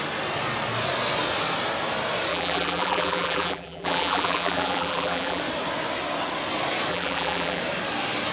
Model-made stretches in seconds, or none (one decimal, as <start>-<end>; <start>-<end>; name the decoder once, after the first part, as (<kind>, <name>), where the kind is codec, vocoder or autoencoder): 2.3-5.4 (vocoder, BigVGAN v2); 6.9-7.6